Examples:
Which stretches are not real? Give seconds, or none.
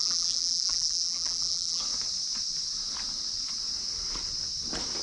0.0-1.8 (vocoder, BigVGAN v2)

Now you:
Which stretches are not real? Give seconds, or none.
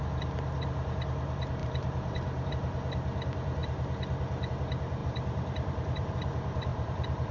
1.6-2.5 (vocoder, BigVGAN v2); 5.0-6.1; 6.7-7.3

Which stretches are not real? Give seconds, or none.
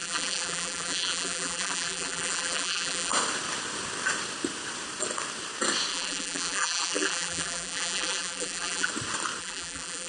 0.0-3.1 (vocoder, BigVGAN v2); 5.9-8.9; 9.4-10.1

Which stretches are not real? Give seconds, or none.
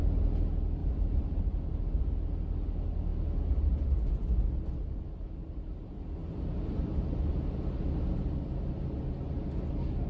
0.8-1.4 (vocoder, BigVGAN v2); 6.2-7.3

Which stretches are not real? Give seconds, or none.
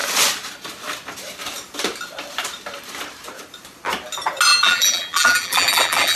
4.5-6.2 (vocoder, BigVGAN v2)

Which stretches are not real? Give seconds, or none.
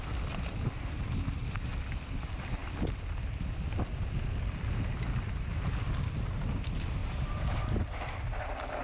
7.0-7.6 (vocoder, BigVGAN v2)